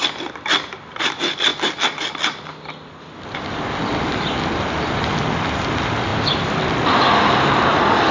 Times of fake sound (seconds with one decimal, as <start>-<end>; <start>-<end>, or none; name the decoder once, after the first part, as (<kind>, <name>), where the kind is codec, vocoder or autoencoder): 0.0-1.5 (vocoder, BigVGAN v2); 4.9-8.1